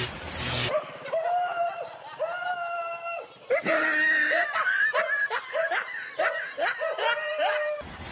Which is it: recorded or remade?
recorded